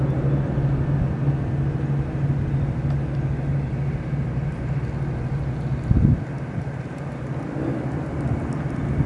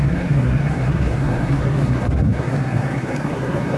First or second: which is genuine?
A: first